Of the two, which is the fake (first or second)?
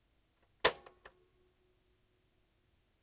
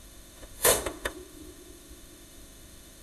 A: second